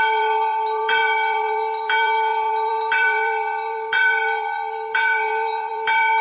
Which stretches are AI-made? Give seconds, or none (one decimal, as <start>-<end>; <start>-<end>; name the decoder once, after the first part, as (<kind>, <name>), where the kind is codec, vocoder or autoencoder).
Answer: 0.0-6.2 (vocoder, BigVGAN v2)